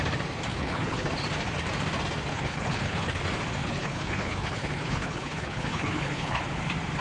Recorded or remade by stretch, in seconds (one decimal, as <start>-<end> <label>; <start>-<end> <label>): 0.0-0.5 recorded; 0.5-1.1 remade; 1.1-2.3 recorded; 2.3-3.2 remade; 3.2-3.6 recorded; 3.6-6.4 remade; 6.4-7.0 recorded